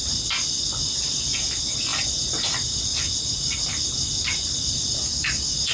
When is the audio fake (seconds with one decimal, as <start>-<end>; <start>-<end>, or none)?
none